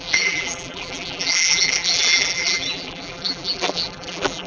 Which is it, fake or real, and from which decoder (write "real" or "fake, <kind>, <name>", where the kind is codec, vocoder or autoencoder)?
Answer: fake, vocoder, BigVGAN v2